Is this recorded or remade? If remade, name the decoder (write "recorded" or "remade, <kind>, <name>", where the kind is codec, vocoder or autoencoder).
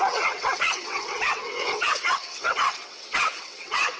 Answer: remade, vocoder, WaveNeXt